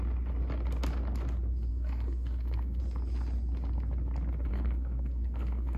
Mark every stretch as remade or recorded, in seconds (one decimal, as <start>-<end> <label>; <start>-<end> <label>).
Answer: 0.0-1.7 recorded; 1.7-2.8 remade; 2.8-4.5 recorded; 4.5-5.8 remade